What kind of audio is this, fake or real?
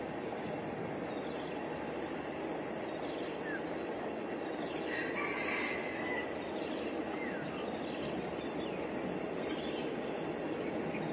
real